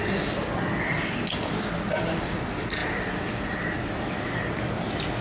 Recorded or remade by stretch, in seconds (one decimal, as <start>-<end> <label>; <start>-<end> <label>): 0.0-5.2 recorded